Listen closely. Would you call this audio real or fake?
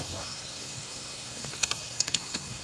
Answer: fake